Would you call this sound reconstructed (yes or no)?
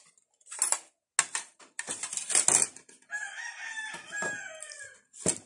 no